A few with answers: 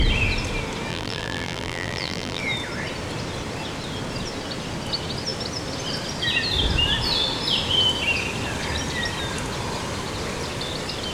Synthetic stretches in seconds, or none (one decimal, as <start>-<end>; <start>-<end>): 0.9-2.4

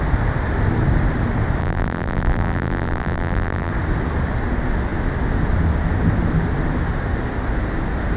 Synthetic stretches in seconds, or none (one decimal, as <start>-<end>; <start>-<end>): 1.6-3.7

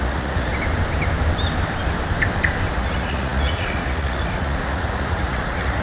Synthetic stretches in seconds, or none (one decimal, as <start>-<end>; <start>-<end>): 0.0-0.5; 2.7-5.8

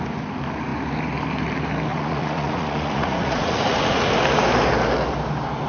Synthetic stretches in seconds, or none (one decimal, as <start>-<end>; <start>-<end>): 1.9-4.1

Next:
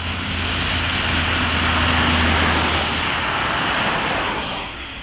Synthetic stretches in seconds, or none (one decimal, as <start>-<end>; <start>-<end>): 4.2-5.0